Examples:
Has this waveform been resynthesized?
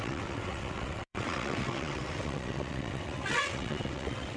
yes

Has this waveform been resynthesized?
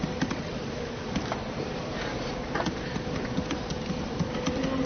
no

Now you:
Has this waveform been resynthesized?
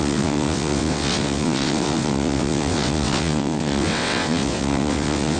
yes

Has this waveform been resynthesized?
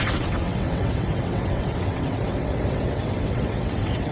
yes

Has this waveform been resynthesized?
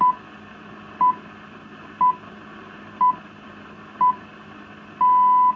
no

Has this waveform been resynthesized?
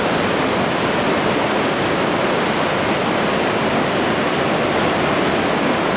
no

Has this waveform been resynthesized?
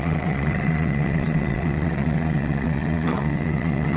yes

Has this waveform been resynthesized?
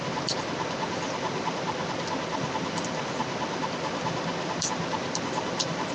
no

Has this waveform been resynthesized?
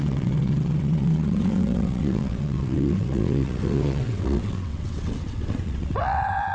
yes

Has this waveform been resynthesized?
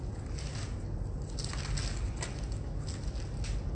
no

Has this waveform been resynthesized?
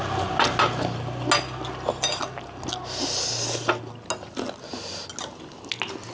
no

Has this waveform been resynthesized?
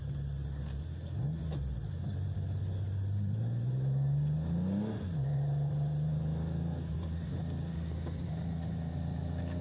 no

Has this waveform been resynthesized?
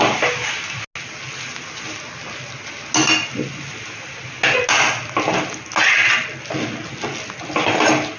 no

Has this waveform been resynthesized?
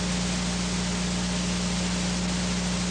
no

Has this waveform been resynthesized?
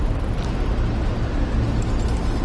no